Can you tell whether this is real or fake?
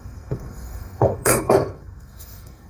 fake